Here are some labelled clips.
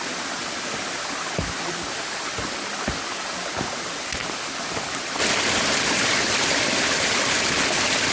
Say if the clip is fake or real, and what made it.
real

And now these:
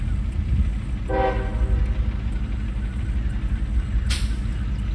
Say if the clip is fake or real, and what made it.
real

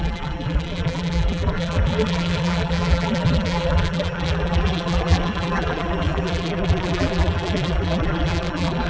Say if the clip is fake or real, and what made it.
fake, vocoder, BigVGAN v2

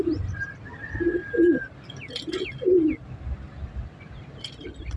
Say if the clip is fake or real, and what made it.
real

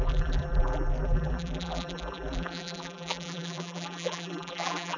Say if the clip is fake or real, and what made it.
fake, vocoder, BigVGAN v2